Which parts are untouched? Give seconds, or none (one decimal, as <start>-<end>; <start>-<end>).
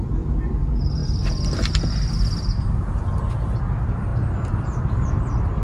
0.0-5.6